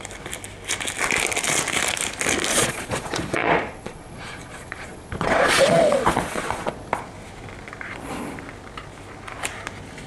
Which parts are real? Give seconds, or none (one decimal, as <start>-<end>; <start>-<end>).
0.0-2.5; 6.9-10.1